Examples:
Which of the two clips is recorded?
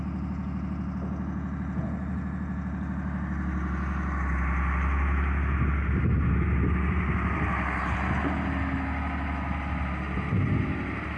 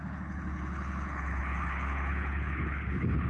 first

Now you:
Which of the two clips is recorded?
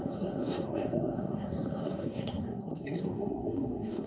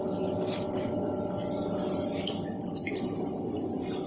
second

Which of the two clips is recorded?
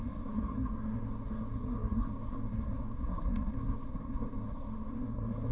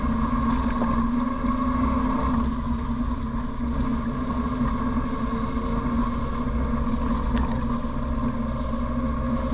second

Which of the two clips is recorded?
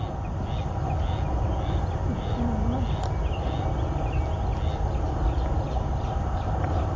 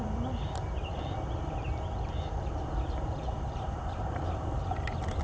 first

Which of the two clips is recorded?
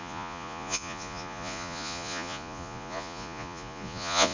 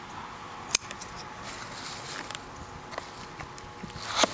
second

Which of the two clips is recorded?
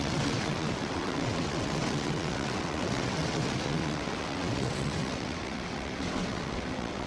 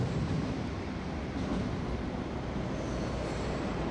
second